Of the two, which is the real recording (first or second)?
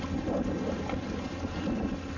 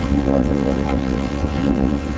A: first